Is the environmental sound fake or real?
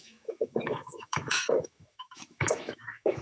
fake